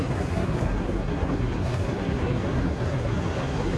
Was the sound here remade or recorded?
remade